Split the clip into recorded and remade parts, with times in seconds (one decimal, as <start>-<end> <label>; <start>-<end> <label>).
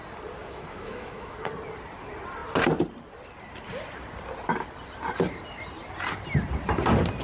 0.0-0.4 recorded; 0.4-1.5 remade; 1.5-7.2 recorded